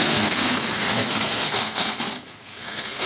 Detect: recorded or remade remade